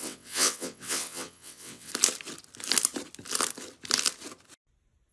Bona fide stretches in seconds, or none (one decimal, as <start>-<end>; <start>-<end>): 1.9-5.1